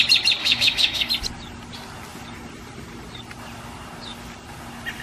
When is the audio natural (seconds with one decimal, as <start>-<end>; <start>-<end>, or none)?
0.0-0.4; 1.1-5.0